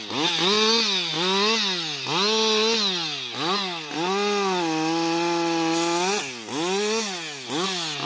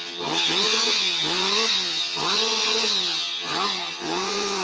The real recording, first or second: first